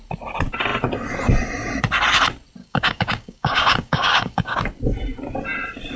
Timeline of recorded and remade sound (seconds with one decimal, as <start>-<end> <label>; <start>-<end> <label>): 0.0-2.6 recorded; 2.6-4.6 remade; 4.6-6.0 recorded